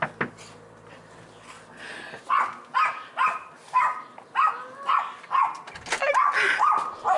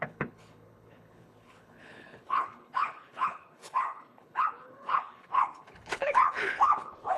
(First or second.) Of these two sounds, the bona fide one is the first